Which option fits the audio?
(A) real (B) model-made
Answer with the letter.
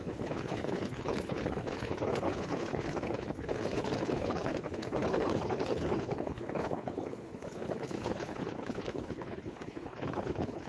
B